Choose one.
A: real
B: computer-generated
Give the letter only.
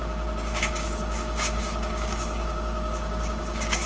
B